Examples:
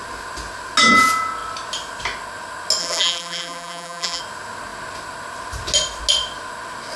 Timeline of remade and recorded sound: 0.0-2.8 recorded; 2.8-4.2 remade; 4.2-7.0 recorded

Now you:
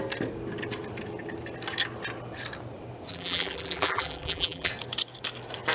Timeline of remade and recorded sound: 0.0-3.1 recorded; 3.1-4.7 remade; 4.7-5.7 recorded

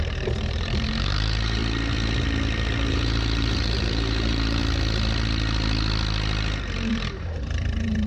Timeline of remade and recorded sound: 0.0-1.6 remade; 1.6-2.9 recorded; 2.9-4.6 remade; 4.6-6.9 recorded; 6.9-8.1 remade

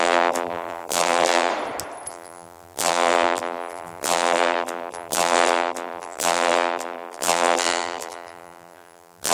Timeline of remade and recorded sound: 0.0-1.5 remade; 1.5-2.1 recorded; 2.1-9.3 remade

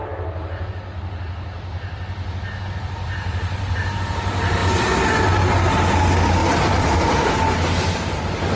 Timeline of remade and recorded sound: 0.0-4.6 recorded; 4.6-5.2 remade; 5.2-6.4 recorded; 6.4-7.3 remade; 7.3-8.6 recorded

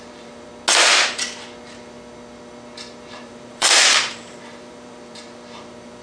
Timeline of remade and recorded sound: 0.0-0.5 remade; 0.5-3.1 recorded; 3.1-6.0 remade

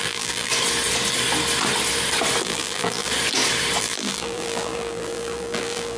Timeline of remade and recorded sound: 0.0-0.5 remade; 0.5-2.4 recorded; 2.4-3.1 remade; 3.1-3.8 recorded; 3.8-6.0 remade

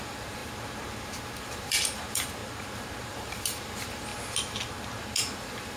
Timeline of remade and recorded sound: 0.0-0.4 remade; 0.4-1.5 recorded; 1.5-2.4 remade; 2.4-3.0 recorded; 3.0-4.1 remade; 4.1-5.0 recorded; 5.0-5.8 remade